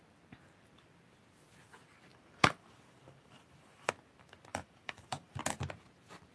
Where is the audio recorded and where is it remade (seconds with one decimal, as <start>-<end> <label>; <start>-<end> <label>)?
0.0-2.1 recorded; 2.1-3.9 remade; 3.9-4.5 recorded; 4.5-5.4 remade; 5.4-6.3 recorded